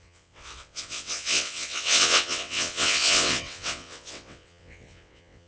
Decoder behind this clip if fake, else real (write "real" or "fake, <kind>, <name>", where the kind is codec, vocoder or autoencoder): fake, vocoder, WaveNeXt